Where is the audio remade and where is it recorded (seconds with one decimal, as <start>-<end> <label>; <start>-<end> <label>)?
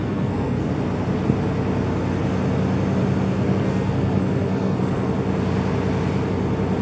0.0-0.7 remade; 0.7-3.3 recorded; 3.3-5.1 remade; 5.1-6.8 recorded